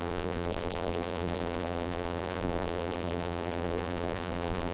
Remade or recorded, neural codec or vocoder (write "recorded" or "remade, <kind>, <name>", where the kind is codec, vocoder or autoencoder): remade, vocoder, BigVGAN v2